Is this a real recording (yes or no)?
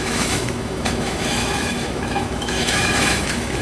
no